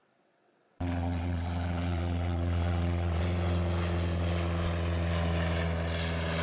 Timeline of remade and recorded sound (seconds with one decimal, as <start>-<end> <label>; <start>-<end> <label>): 0.0-3.2 remade; 3.2-6.4 recorded